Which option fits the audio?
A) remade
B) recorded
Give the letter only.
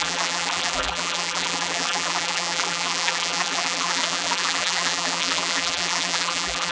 A